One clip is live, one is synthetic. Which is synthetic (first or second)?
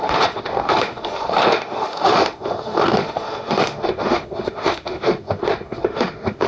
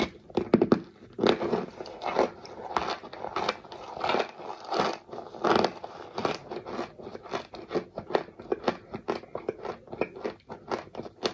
first